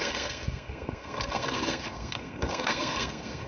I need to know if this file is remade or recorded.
remade